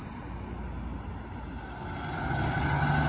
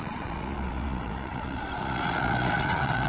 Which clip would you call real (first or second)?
first